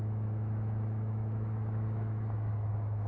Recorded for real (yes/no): no